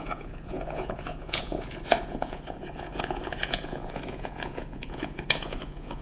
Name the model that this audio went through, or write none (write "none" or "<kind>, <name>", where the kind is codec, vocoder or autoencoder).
vocoder, Vocos